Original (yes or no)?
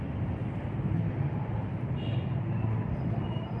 yes